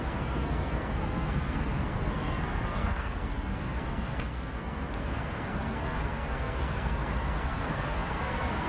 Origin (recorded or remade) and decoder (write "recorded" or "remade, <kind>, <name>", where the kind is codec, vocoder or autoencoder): remade, codec, SNAC